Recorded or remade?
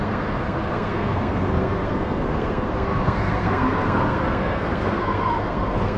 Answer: remade